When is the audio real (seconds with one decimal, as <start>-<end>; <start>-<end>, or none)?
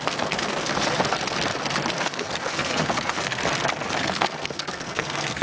0.7-2.0; 3.4-4.0